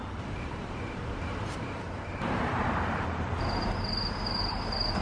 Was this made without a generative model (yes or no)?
no